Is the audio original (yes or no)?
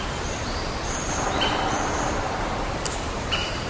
no